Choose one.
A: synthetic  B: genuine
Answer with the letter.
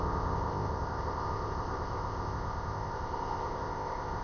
A